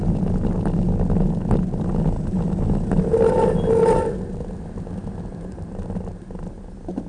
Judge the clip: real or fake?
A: real